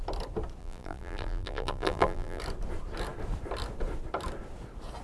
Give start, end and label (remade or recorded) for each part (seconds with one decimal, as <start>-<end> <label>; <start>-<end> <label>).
0.0-0.6 recorded; 0.6-2.4 remade; 2.4-5.0 recorded